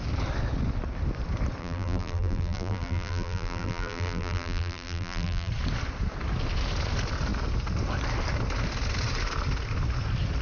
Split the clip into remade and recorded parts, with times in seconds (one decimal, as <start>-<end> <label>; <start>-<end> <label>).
0.0-1.6 recorded; 1.6-5.5 remade; 5.5-10.4 recorded